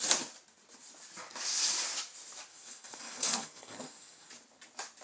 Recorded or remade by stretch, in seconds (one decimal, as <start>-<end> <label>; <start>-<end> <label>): 0.0-2.5 recorded; 2.5-4.3 remade; 4.3-5.0 recorded